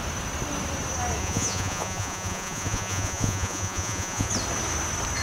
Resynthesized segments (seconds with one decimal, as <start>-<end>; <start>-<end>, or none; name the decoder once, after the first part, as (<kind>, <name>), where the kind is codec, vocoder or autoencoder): 1.2-4.3 (vocoder, Vocos)